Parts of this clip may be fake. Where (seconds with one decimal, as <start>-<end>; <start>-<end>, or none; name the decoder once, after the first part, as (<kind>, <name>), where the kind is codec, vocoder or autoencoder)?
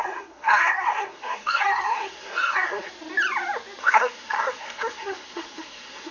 0.0-2.9 (codec, SNAC); 3.8-6.1